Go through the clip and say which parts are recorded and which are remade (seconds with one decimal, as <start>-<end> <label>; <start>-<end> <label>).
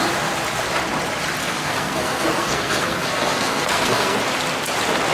0.0-1.4 recorded; 1.4-4.2 remade; 4.2-5.1 recorded